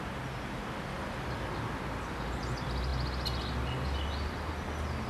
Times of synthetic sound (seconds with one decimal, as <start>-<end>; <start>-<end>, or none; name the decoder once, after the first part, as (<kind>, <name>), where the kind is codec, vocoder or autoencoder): none